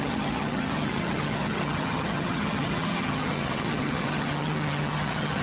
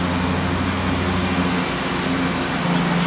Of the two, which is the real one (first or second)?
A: second